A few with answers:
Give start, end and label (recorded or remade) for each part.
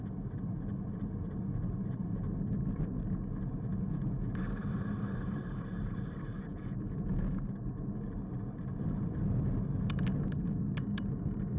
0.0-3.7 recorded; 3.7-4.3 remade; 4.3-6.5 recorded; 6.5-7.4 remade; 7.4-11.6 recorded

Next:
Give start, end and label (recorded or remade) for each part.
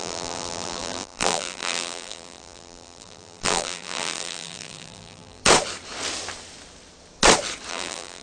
0.0-5.4 remade; 5.4-7.7 recorded; 7.7-8.2 remade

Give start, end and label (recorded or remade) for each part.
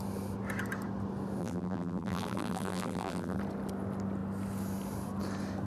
0.0-1.4 recorded; 1.4-3.4 remade; 3.4-5.7 recorded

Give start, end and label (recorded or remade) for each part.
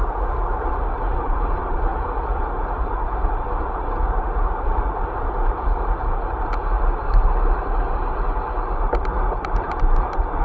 0.0-10.4 remade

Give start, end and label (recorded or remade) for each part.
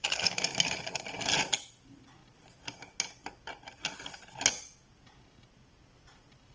0.0-6.5 recorded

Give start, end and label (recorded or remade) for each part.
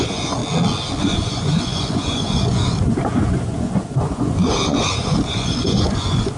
0.0-0.4 remade; 0.4-1.0 recorded; 1.0-6.4 remade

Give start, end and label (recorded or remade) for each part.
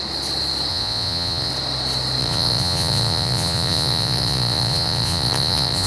0.0-0.7 recorded; 0.7-1.5 remade; 1.5-2.2 recorded; 2.2-5.9 remade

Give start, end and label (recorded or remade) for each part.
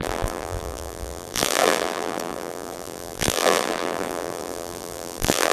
0.0-5.5 remade